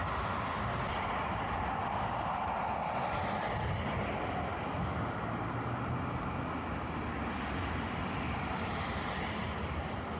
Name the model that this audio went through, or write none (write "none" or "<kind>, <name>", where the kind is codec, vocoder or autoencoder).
none